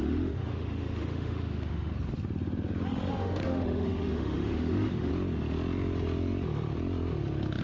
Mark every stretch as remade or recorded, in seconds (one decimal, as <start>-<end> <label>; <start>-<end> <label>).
0.0-1.9 remade; 1.9-3.1 recorded; 3.1-5.1 remade; 5.1-7.6 recorded